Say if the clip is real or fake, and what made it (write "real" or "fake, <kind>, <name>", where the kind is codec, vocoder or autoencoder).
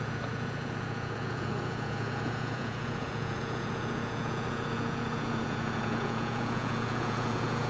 fake, vocoder, Vocos